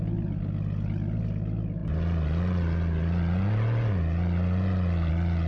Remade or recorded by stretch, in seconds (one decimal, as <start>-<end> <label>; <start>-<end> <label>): 0.0-5.5 recorded